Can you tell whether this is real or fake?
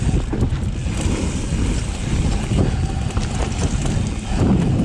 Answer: real